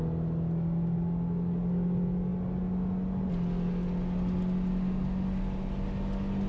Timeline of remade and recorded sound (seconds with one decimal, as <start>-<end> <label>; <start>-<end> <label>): 0.0-6.5 recorded